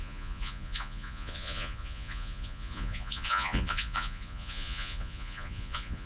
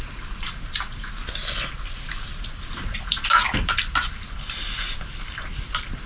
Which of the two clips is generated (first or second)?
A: first